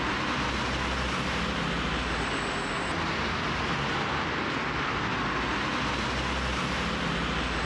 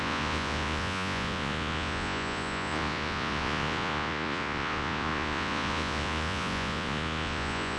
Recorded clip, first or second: first